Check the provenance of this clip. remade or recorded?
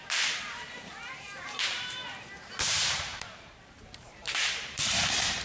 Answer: remade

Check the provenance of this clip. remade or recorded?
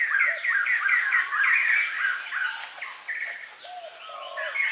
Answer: recorded